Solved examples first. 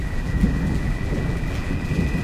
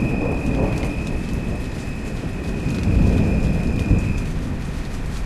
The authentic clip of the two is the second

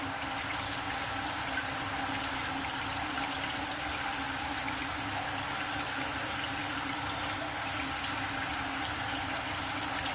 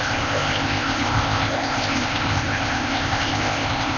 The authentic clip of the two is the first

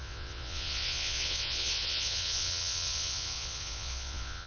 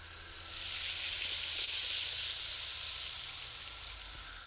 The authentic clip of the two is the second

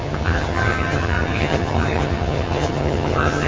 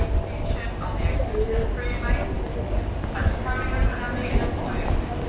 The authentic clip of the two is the second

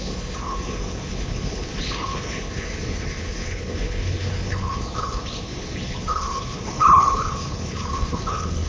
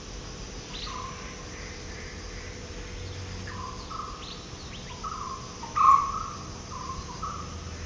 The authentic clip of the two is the second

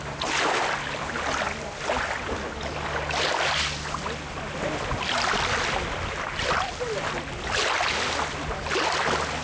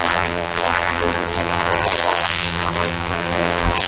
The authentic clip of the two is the first